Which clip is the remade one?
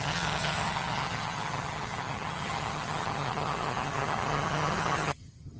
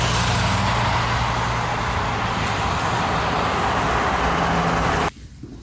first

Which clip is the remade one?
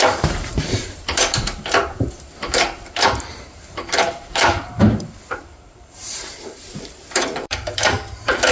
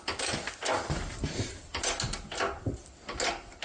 first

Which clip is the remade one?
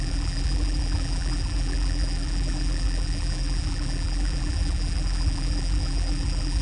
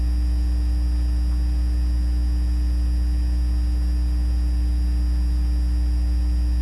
first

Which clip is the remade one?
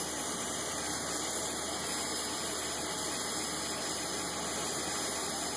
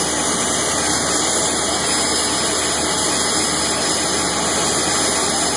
first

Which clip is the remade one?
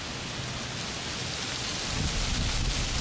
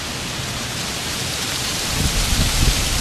second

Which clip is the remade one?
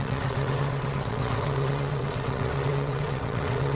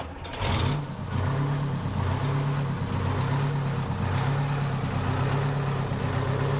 first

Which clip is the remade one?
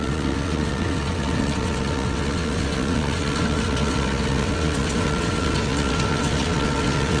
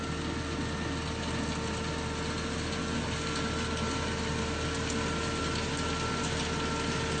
first